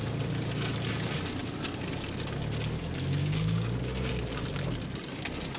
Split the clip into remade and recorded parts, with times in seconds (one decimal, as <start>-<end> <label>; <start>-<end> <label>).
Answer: 0.0-3.2 recorded; 3.2-4.1 remade; 4.1-5.6 recorded